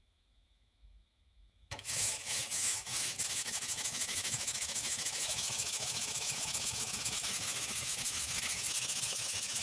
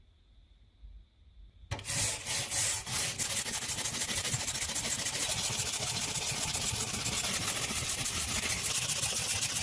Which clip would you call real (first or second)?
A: second